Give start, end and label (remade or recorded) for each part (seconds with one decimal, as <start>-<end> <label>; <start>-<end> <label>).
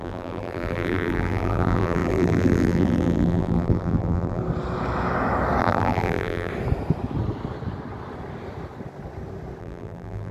0.0-4.4 remade; 4.4-5.6 recorded; 5.6-6.5 remade; 6.5-9.6 recorded; 9.6-10.3 remade